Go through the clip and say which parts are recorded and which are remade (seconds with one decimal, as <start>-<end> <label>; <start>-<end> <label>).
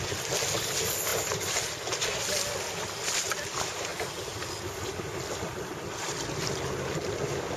0.0-7.6 recorded